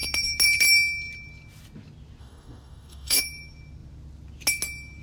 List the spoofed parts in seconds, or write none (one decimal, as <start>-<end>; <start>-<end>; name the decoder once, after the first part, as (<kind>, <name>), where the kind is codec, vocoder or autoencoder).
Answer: 2.2-3.2 (codec, DAC)